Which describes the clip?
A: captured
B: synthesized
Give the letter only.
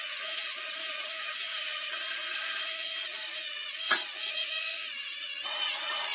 B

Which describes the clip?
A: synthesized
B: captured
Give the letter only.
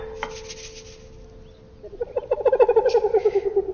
B